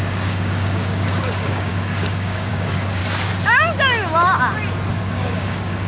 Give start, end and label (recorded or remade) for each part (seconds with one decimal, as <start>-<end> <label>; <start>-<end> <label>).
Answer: 0.0-3.0 remade; 3.0-5.0 recorded; 5.0-5.9 remade